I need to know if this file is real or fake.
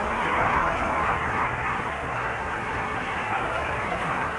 fake